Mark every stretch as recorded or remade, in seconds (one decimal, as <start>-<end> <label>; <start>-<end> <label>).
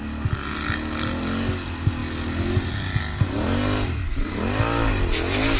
0.0-5.6 recorded